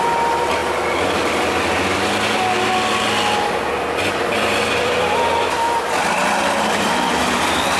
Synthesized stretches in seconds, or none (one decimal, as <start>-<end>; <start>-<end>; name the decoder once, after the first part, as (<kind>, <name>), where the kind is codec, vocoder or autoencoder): none